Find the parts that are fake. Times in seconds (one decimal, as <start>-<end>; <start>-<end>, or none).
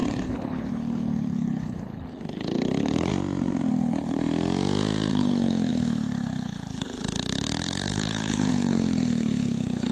0.0-3.1; 3.7-4.2; 5.1-9.9